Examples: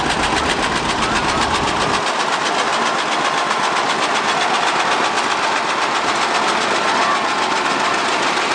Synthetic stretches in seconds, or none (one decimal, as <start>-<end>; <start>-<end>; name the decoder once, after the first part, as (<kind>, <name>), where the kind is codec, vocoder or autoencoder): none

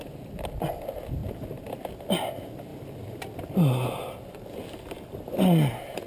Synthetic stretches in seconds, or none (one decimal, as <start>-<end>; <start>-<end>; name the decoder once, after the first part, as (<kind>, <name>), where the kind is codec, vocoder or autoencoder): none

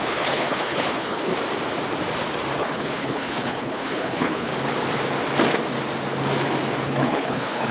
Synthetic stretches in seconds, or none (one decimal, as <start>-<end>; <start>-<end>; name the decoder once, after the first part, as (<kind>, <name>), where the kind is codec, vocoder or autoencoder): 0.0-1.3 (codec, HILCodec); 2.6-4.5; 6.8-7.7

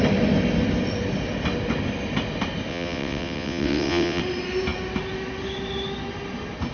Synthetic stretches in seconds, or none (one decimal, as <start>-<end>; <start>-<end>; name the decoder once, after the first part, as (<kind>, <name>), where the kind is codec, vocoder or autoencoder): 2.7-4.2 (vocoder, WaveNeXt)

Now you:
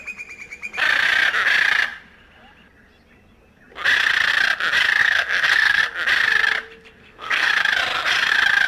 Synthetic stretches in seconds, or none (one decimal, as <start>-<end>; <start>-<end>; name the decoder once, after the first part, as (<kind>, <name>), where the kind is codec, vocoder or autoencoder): 5.0-5.8 (codec, SNAC); 7.0-7.5